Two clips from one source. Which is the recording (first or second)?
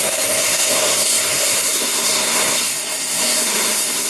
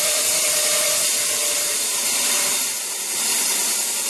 second